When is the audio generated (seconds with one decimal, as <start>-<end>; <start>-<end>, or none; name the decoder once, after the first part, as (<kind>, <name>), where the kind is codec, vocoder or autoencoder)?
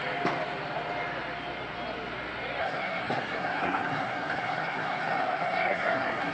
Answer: 2.6-6.3 (codec, SNAC)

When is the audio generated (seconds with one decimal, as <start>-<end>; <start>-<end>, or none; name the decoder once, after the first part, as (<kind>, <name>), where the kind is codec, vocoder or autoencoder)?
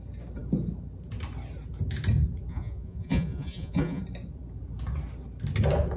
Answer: 2.5-4.0 (vocoder, Vocos)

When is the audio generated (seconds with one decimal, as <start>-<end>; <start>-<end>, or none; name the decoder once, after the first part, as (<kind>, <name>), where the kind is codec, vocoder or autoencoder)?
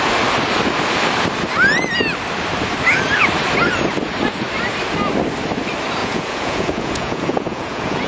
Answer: 6.0-8.1 (vocoder, Vocos)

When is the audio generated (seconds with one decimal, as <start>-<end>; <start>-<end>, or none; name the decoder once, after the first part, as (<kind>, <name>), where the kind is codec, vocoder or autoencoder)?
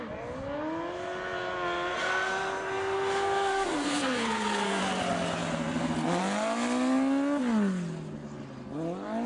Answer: 1.9-4.8 (codec, SNAC)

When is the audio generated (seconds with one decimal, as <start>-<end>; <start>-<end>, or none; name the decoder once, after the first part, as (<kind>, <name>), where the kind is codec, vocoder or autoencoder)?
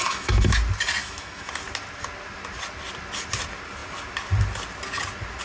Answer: 0.0-0.5 (autoencoder, DAC-VAE); 1.0-1.5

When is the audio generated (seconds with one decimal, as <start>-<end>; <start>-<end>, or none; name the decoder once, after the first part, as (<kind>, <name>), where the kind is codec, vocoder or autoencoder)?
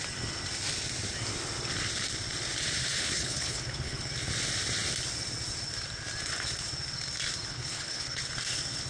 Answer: 2.8-4.1 (codec, HILCodec); 7.5-8.2